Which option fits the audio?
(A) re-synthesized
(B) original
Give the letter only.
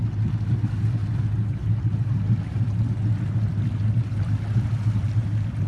B